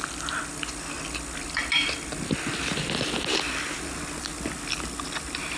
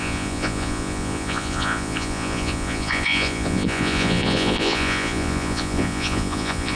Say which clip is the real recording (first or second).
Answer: first